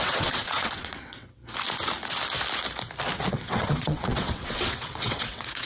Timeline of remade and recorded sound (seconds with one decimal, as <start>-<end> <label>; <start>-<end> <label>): 0.0-1.4 remade; 1.4-3.3 recorded; 3.3-5.7 remade